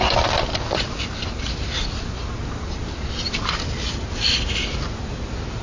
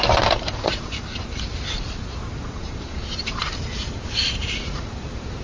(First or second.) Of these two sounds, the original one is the first